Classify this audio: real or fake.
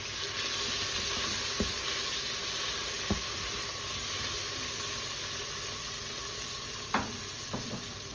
real